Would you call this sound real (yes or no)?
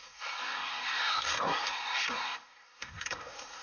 no